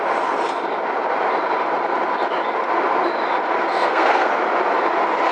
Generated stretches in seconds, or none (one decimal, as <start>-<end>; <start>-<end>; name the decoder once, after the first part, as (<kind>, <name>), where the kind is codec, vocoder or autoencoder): 3.7-4.3 (codec, SNAC)